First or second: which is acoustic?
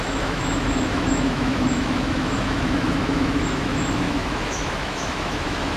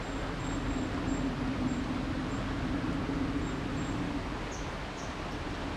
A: second